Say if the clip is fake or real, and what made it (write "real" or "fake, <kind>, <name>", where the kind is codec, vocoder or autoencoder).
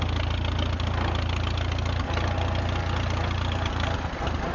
real